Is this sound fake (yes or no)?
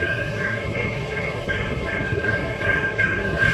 yes